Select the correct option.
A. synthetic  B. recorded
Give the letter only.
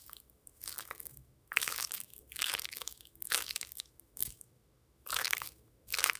A